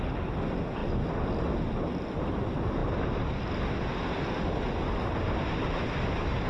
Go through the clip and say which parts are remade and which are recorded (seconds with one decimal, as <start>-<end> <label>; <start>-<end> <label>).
0.0-6.5 recorded